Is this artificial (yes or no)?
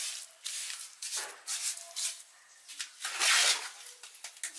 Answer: no